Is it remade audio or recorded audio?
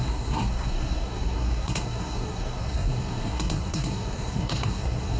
remade